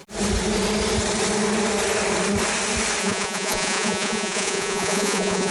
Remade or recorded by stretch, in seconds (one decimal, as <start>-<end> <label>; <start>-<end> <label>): 0.0-3.0 recorded; 3.0-5.5 remade